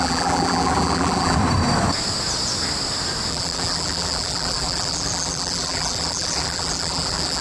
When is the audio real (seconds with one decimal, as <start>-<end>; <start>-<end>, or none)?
1.4-3.3